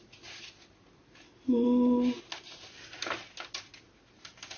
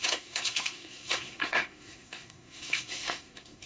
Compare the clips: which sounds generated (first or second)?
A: second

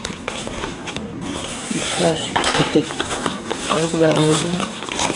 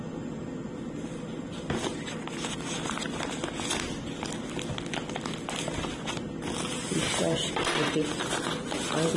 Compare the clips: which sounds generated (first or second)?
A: first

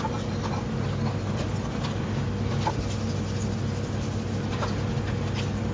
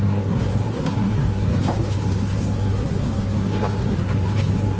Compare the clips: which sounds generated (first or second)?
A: second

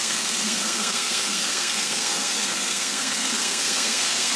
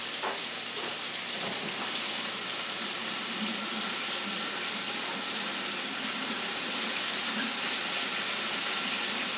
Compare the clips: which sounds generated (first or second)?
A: first